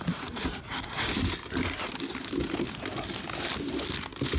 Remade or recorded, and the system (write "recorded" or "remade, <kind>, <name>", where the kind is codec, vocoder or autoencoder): recorded